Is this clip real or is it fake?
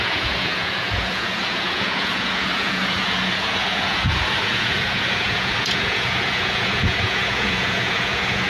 fake